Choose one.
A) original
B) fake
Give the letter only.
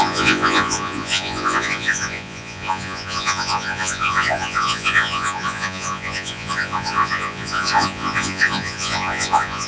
B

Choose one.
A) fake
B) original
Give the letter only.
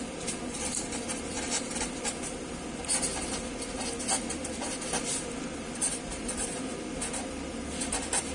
B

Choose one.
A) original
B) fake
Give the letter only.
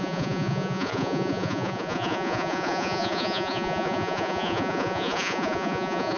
B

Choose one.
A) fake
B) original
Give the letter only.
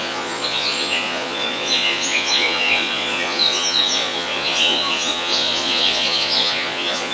A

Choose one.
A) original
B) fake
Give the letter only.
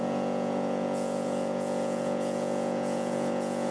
B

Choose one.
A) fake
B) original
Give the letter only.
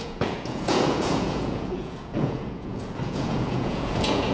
A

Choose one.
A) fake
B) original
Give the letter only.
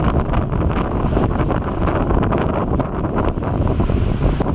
B